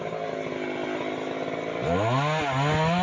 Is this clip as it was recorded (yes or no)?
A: yes